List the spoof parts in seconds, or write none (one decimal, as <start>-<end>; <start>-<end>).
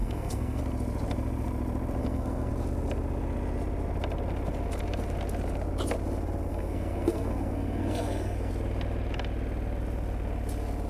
0.0-0.6; 2.0-2.5; 6.5-8.5